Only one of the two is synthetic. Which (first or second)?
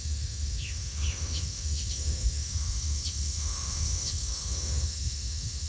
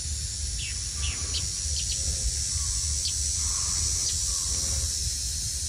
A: first